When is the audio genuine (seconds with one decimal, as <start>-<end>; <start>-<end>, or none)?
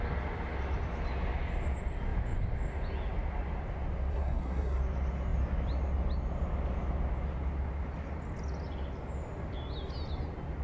0.0-4.1; 4.8-10.6